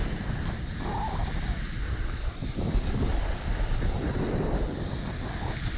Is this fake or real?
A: fake